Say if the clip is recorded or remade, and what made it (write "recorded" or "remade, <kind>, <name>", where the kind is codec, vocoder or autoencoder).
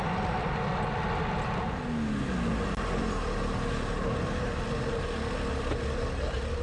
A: recorded